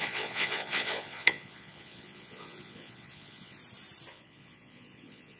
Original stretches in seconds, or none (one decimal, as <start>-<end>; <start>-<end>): 3.6-4.1